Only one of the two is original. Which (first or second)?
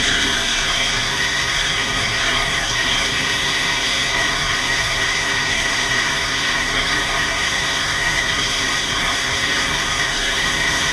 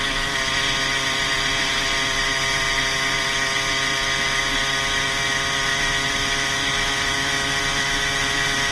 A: second